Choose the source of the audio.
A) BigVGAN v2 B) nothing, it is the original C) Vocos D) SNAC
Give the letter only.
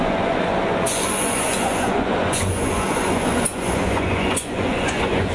C